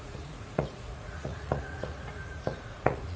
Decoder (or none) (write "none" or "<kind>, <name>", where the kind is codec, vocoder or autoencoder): vocoder, Vocos